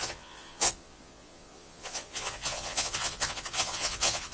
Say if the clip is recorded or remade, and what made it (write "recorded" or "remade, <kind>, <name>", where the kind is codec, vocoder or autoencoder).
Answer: remade, vocoder, Vocos